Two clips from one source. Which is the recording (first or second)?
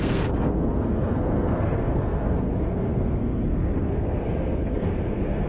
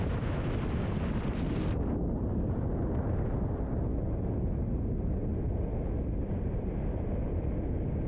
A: second